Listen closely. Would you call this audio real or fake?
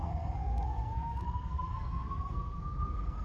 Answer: fake